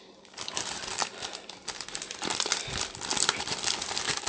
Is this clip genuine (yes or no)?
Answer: no